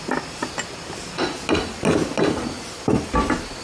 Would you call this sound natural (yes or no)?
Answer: yes